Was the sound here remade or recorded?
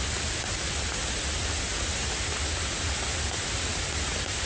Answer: recorded